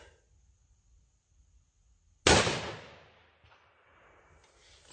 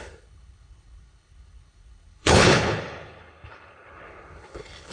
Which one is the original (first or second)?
first